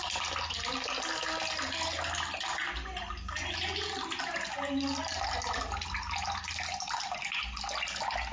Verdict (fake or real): real